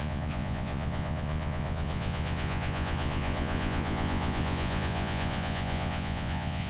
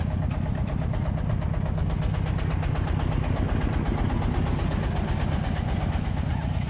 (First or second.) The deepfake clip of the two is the first